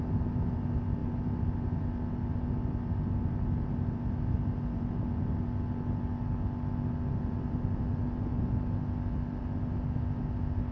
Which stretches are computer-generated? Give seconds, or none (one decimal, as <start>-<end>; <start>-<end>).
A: none